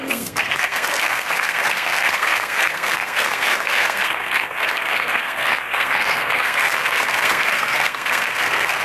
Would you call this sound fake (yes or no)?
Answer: yes